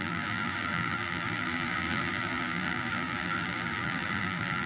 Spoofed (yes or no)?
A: yes